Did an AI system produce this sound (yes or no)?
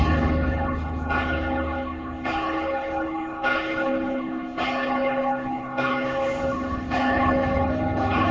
yes